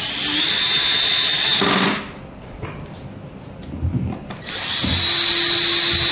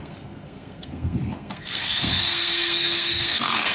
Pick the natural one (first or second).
first